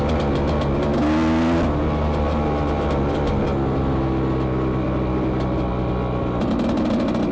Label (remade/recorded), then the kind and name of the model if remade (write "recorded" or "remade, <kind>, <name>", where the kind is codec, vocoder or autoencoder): recorded